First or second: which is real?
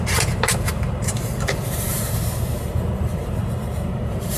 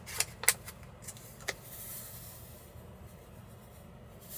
second